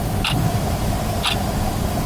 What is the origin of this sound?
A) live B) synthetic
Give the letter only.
A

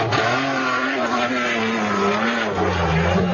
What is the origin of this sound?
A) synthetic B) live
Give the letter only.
B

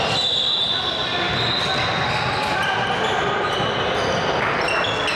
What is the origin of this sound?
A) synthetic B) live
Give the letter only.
B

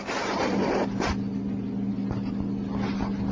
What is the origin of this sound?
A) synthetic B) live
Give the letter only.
B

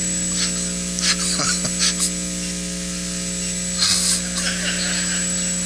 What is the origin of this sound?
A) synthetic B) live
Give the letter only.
B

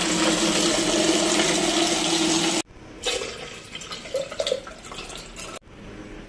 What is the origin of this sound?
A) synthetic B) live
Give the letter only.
B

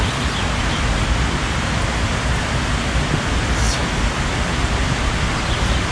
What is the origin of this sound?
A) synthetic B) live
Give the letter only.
B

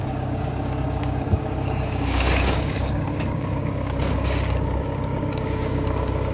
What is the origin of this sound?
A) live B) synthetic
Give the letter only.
B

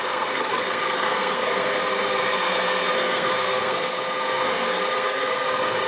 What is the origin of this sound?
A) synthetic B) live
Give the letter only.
A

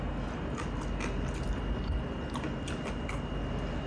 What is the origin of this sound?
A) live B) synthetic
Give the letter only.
A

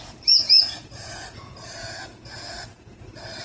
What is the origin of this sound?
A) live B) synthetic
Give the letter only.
B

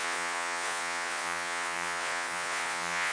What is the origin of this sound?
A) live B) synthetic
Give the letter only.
B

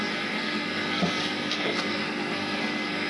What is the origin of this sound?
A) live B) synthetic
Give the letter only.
B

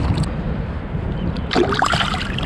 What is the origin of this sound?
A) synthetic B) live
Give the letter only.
B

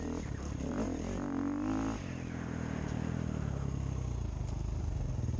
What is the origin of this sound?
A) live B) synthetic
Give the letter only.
A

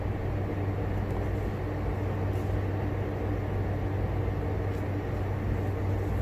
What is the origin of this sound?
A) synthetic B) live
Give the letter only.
B